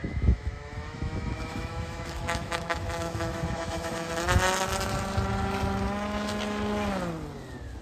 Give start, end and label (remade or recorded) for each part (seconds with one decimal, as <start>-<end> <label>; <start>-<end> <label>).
0.0-4.1 remade; 4.1-7.8 recorded